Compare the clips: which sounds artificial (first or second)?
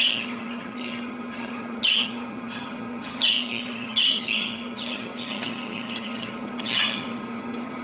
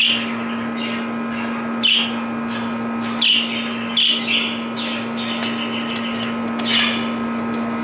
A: first